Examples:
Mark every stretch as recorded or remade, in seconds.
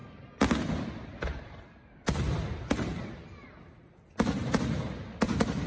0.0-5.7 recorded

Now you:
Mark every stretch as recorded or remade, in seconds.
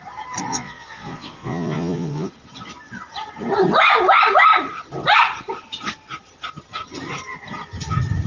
0.0-0.5 recorded; 0.5-2.3 remade; 2.3-8.3 recorded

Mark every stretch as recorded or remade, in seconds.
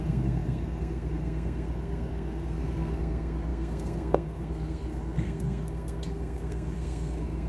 0.0-7.5 remade